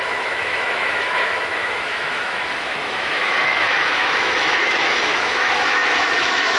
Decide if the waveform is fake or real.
fake